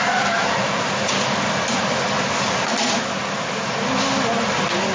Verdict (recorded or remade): recorded